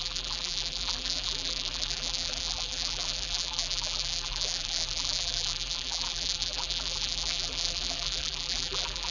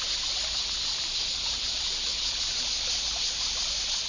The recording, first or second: second